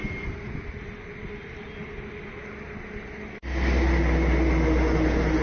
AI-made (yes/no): no